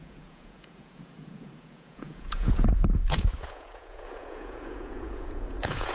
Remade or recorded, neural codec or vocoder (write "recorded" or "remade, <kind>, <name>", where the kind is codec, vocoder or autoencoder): remade, vocoder, Vocos